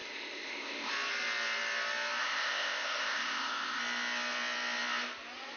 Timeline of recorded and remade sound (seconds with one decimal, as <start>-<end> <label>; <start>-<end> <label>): 0.0-0.9 remade; 0.9-2.2 recorded; 2.2-3.8 remade; 3.8-5.6 recorded